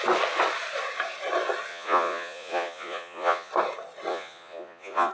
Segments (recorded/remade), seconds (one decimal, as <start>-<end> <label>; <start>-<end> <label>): 0.0-1.7 recorded; 1.7-3.5 remade; 3.5-4.1 recorded; 4.1-5.1 remade